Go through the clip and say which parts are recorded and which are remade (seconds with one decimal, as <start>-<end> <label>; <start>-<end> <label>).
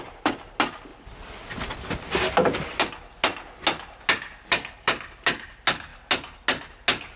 0.0-7.2 recorded